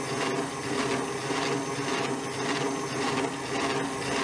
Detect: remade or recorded recorded